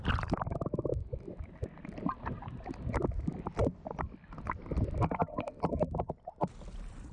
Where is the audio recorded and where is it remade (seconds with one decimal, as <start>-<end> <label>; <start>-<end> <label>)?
0.0-7.1 recorded